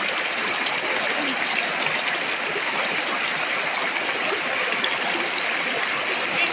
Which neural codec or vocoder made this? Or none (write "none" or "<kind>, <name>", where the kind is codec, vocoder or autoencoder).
none